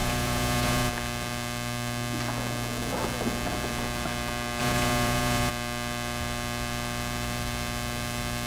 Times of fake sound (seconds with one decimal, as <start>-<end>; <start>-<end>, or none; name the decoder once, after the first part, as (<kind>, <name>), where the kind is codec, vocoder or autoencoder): 0.0-0.9 (vocoder, Vocos); 4.6-5.5

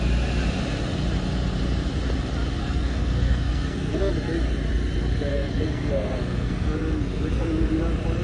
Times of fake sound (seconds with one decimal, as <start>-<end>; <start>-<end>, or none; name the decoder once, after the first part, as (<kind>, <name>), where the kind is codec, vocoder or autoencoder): 2.6-4.1 (codec, SNAC); 5.3-7.7

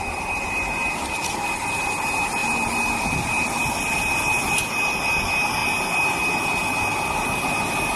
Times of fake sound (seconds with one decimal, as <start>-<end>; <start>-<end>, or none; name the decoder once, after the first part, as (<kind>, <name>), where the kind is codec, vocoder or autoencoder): none

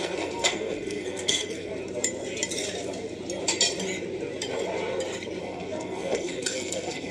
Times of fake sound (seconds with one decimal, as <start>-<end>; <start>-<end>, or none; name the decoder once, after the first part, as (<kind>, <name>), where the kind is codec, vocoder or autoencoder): 0.0-1.7 (codec, SNAC); 5.4-7.1

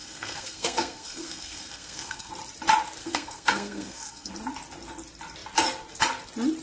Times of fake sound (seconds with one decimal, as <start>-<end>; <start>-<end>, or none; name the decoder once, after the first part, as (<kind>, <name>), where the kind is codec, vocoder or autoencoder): 0.0-2.3 (codec, SNAC); 3.0-4.3

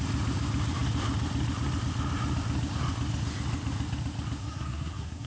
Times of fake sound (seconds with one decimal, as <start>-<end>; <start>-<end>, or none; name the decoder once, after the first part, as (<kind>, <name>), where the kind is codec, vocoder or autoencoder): 4.4-5.3 (codec, SNAC)

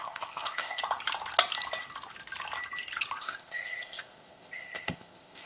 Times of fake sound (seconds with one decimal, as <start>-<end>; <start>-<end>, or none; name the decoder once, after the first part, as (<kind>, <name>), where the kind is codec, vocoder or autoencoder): 0.0-0.8 (codec, ZipCodec); 3.2-5.5